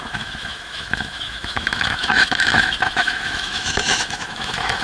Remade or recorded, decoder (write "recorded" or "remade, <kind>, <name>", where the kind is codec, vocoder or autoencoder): remade, autoencoder, DAC-VAE